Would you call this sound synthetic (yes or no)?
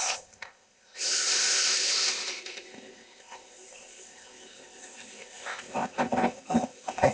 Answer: yes